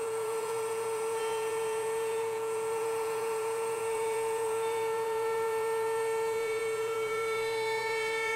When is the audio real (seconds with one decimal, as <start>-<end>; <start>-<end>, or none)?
none